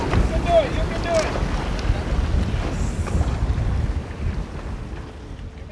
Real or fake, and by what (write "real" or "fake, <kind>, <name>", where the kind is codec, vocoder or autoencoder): real